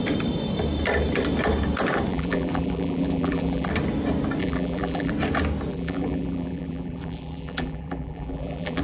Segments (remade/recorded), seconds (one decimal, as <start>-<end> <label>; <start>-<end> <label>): 0.0-2.1 recorded; 2.1-3.7 remade; 3.7-4.4 recorded; 4.4-5.1 remade; 5.1-5.7 recorded; 5.7-8.8 remade